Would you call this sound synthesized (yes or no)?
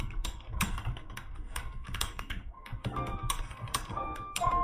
yes